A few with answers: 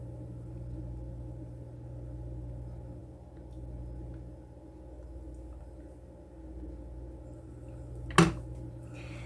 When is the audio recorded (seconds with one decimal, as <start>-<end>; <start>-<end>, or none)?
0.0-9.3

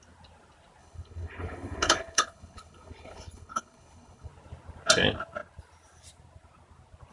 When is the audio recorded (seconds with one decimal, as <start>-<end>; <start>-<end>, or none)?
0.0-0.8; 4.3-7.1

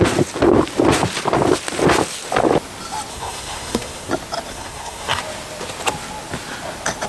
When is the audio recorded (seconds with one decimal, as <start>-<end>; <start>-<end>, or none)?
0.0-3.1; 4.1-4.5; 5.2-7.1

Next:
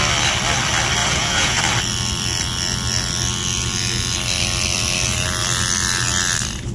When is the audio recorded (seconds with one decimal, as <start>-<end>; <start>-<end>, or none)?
0.0-1.0; 1.6-6.7

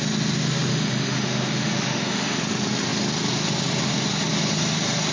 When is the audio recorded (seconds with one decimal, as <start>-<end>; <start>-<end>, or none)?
0.0-0.7; 2.4-5.1

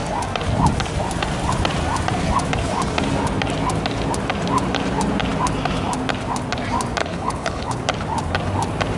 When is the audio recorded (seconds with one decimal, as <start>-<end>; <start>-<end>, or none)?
0.0-7.0; 7.7-9.0

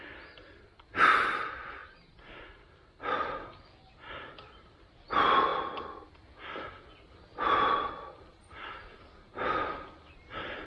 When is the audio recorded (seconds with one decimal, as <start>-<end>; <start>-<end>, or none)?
0.0-10.7